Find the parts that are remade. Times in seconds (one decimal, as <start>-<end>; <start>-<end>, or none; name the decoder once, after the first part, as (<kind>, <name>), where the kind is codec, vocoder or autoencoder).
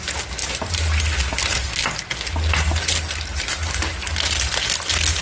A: none